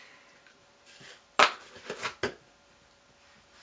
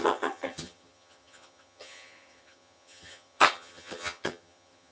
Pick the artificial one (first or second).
second